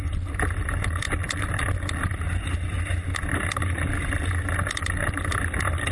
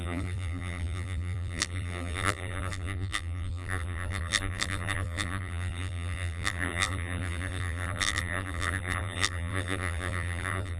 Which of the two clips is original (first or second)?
first